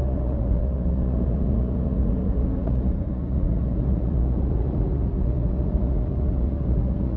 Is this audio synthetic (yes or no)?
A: yes